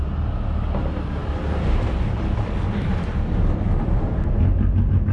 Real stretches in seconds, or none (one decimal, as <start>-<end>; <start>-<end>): 0.0-1.2; 4.3-5.1